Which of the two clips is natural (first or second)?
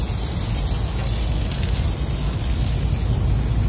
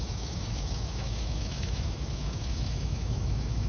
first